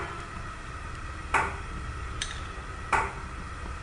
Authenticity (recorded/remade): recorded